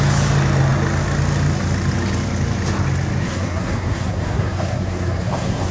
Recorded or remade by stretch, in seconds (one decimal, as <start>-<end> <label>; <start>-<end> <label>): 0.0-3.2 recorded; 3.2-5.7 remade